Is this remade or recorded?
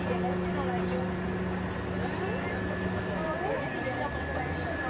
recorded